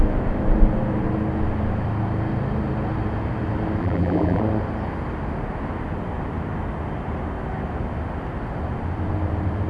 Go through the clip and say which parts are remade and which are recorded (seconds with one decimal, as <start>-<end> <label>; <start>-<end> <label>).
0.0-3.8 recorded; 3.8-4.4 remade; 4.4-9.7 recorded